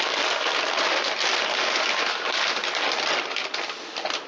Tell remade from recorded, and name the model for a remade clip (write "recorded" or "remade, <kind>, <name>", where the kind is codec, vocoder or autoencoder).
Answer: recorded